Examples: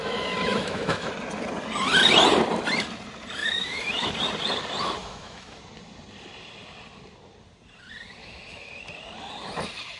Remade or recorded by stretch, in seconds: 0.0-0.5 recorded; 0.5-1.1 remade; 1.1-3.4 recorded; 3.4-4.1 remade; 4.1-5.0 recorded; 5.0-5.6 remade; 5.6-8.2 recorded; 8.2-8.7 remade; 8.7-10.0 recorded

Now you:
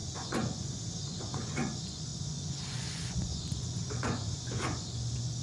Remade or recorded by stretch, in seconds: 0.0-5.4 remade

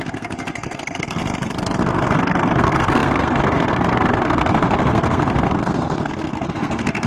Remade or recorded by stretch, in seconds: 0.0-1.2 remade; 1.2-1.8 recorded; 1.8-7.1 remade

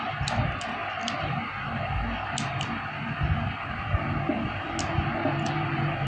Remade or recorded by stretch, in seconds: 0.0-6.1 recorded